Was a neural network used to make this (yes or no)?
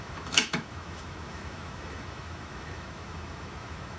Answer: yes